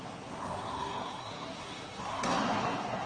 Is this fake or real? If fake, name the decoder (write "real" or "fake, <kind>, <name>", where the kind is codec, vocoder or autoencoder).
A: fake, codec, SNAC